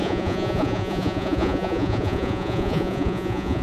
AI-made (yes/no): yes